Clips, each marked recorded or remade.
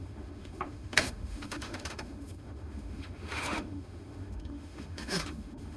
remade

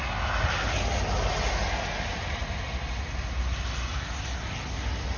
recorded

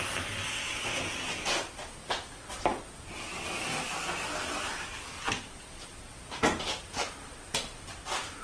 recorded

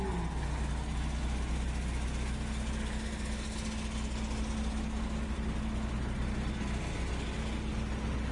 recorded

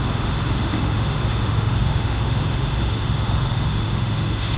remade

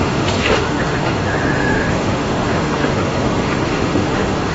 remade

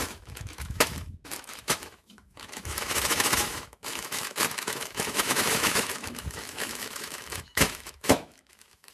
remade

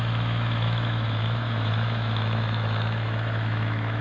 remade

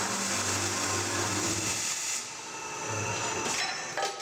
recorded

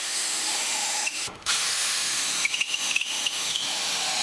remade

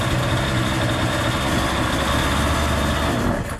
recorded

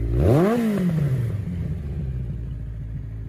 recorded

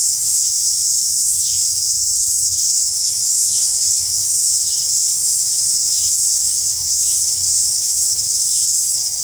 remade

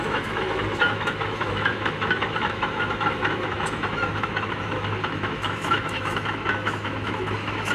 remade